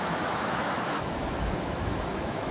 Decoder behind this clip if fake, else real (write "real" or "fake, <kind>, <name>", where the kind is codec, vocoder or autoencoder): fake, autoencoder, DAC-VAE